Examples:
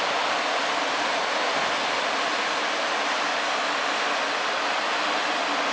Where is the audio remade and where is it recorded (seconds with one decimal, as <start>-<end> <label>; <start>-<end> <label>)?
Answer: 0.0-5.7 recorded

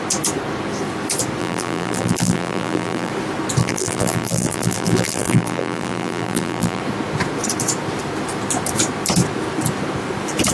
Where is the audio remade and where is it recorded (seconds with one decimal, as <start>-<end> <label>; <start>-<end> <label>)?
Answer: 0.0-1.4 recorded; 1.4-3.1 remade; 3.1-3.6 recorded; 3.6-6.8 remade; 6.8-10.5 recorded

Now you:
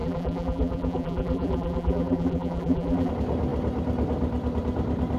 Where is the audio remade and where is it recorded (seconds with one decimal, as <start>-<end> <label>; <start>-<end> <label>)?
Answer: 0.0-3.1 remade; 3.1-5.2 recorded

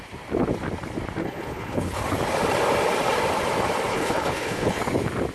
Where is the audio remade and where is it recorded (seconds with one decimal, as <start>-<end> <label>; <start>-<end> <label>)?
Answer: 0.0-1.2 recorded; 1.2-2.0 remade; 2.0-3.9 recorded; 3.9-4.8 remade; 4.8-5.3 recorded

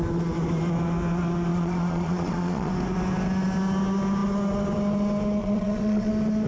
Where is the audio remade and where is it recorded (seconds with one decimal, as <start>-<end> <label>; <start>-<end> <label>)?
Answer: 0.0-1.5 recorded; 1.5-2.7 remade; 2.7-5.4 recorded; 5.4-6.1 remade; 6.1-6.5 recorded

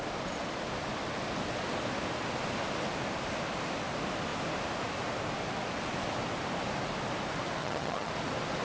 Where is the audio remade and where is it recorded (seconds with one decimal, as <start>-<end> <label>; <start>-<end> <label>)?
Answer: 0.0-7.6 recorded; 7.6-8.1 remade; 8.1-8.6 recorded